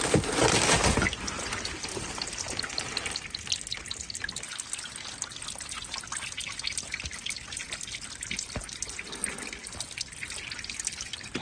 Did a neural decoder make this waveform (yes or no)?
no